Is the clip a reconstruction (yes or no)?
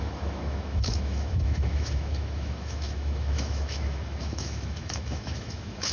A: yes